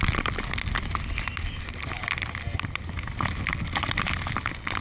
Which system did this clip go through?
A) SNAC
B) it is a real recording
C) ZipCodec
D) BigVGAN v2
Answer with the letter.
D